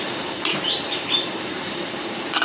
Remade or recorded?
remade